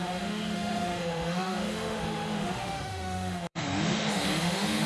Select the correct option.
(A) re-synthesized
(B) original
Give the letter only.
A